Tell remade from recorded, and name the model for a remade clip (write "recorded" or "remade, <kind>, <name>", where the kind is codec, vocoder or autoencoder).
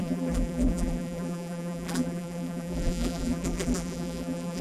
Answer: remade, vocoder, BigVGAN v2